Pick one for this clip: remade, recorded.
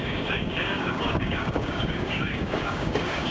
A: remade